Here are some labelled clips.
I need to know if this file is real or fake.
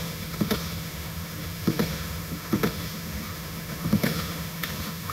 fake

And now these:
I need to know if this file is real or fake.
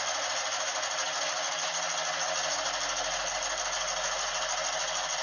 real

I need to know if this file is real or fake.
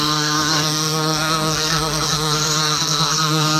fake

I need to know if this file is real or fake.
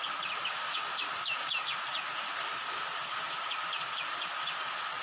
real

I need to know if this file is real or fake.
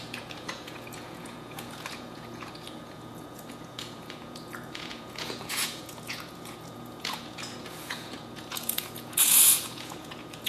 fake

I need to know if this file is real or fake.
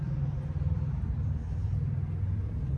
fake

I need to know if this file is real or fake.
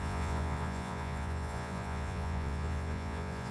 fake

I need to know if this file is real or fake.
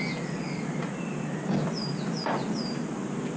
real